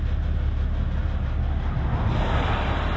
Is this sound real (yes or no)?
yes